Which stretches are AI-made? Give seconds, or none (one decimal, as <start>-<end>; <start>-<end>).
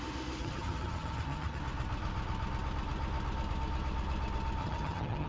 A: 0.4-1.6; 4.6-5.3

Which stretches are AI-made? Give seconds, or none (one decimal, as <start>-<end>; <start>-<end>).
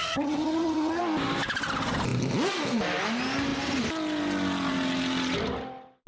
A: 0.0-1.0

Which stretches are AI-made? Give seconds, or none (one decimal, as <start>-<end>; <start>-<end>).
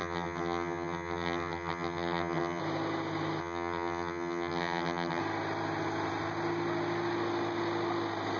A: 0.0-2.6; 3.4-5.2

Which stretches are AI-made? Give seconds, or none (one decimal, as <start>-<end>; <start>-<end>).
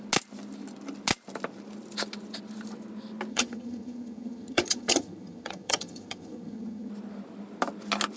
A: 3.3-6.9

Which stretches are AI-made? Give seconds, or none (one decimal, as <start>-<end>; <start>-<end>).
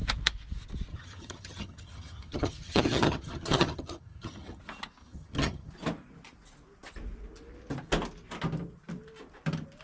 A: 0.9-4.6; 5.0-5.7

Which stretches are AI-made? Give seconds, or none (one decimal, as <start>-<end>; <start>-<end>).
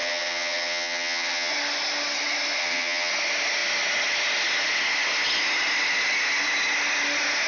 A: 0.0-1.5; 2.6-3.1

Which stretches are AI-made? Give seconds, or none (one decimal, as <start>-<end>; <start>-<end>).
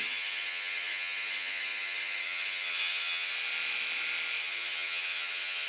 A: 0.0-3.3; 4.4-5.7